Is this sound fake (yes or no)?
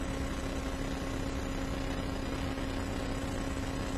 no